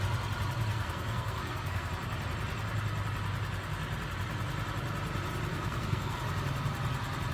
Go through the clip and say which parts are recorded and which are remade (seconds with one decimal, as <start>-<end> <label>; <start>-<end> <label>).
0.0-0.7 recorded; 0.7-1.9 remade; 1.9-5.5 recorded; 5.5-6.2 remade; 6.2-7.3 recorded